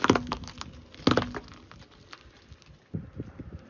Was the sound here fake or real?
real